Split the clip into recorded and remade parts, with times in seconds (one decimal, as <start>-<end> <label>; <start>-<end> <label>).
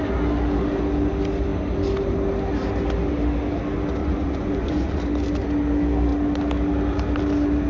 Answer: 0.0-4.0 recorded; 4.0-5.0 remade; 5.0-7.7 recorded